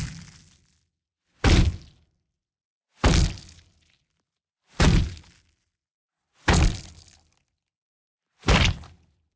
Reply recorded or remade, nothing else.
recorded